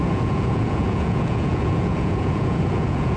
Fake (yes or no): yes